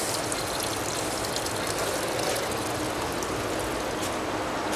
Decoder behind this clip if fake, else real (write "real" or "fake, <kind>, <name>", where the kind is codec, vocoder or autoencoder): real